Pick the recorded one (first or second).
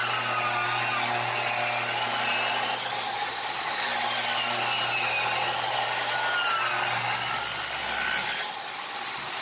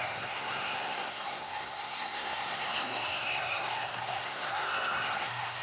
first